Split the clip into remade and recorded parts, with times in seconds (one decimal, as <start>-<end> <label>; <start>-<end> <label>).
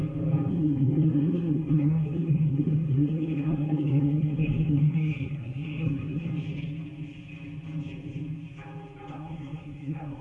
0.0-0.5 recorded; 0.5-6.3 remade; 6.3-9.1 recorded; 9.1-10.2 remade